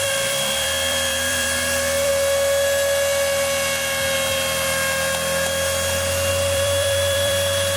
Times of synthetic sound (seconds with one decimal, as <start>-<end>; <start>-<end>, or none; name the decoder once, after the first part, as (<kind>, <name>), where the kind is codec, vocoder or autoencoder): 0.0-2.1 (vocoder, BigVGAN v2); 6.3-7.8